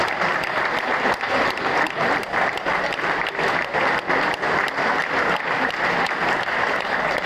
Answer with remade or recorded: recorded